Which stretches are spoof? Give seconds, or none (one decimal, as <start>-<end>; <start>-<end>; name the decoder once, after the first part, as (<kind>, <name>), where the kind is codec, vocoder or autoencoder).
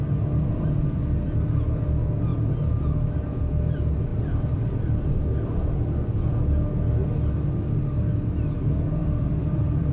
4.1-5.1 (vocoder, BigVGAN v2); 9.0-9.9